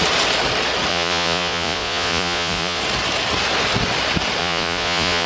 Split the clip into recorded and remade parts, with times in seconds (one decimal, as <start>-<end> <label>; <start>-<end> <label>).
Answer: 0.0-0.9 recorded; 0.9-2.8 remade; 2.8-4.4 recorded; 4.4-5.3 remade